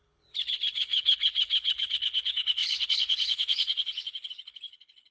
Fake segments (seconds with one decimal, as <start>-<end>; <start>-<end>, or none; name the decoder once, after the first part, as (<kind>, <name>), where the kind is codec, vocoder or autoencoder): 0.0-5.1 (codec, HILCodec)